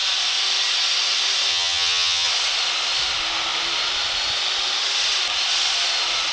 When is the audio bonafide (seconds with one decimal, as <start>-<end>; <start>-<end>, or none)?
0.0-1.5; 2.3-6.3